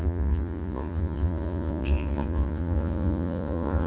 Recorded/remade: remade